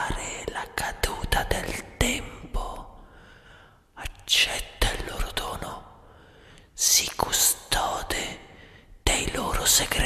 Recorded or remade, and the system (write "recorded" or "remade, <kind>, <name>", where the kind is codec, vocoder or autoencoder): recorded